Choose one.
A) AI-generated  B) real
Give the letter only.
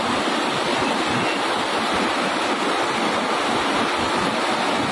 B